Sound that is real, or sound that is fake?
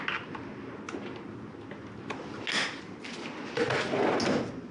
real